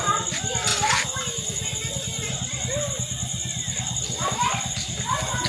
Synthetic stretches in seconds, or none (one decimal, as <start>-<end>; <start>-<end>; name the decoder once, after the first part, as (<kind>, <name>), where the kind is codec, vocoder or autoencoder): none